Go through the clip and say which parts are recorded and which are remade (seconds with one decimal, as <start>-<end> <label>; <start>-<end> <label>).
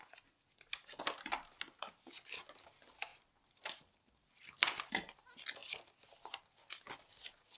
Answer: 0.0-3.1 recorded; 3.1-4.4 remade; 4.4-7.6 recorded